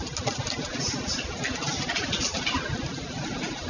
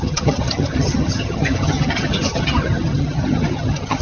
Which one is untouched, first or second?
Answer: first